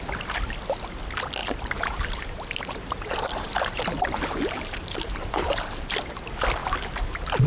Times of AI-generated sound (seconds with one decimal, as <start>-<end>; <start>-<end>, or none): 1.4-5.9